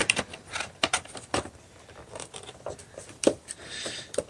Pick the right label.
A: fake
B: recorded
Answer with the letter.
A